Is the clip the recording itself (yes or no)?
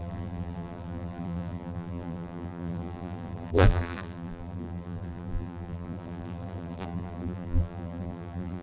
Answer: no